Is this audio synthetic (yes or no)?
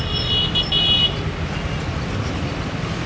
no